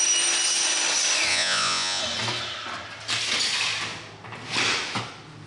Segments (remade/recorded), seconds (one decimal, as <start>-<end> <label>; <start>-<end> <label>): 0.0-1.3 recorded; 1.3-2.0 remade; 2.0-5.5 recorded